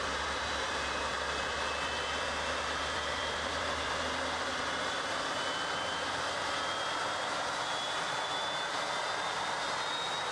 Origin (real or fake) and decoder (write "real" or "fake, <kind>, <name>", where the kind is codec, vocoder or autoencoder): fake, vocoder, BigVGAN v2